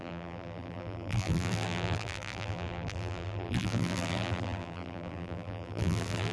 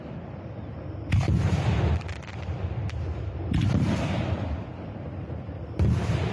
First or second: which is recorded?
second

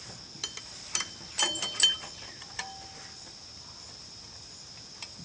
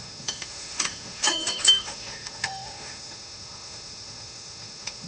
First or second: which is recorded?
first